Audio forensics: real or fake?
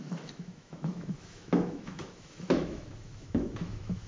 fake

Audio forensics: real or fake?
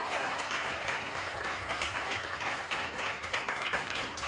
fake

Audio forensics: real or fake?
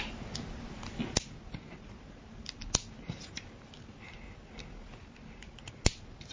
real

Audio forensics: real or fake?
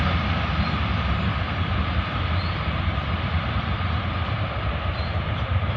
fake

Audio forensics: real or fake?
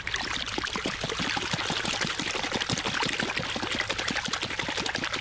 real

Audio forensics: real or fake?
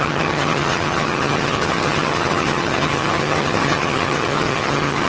fake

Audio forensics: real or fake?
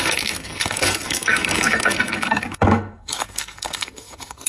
fake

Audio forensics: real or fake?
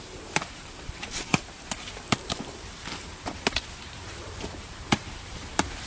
fake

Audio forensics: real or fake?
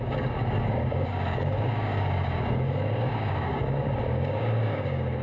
fake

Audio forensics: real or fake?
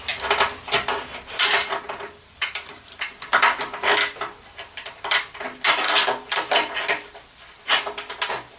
fake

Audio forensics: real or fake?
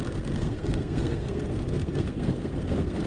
fake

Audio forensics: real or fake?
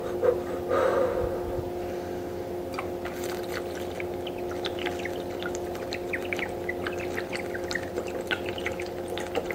real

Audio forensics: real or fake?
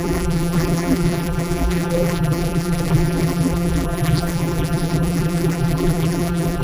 fake